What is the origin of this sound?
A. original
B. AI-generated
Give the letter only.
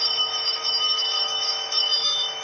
B